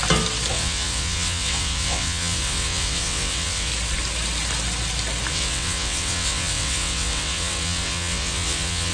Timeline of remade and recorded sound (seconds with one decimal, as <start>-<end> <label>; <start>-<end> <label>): 0.0-0.5 recorded; 0.5-3.7 remade; 3.7-5.3 recorded; 5.3-8.9 remade